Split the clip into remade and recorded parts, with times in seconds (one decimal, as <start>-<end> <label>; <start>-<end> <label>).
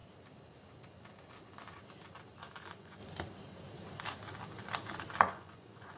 0.0-2.6 recorded; 2.6-3.0 remade; 3.0-5.2 recorded; 5.2-6.0 remade